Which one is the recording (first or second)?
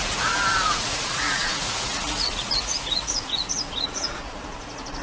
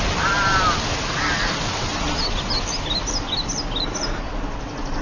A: second